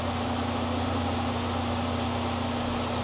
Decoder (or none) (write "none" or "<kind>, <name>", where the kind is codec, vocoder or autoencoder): none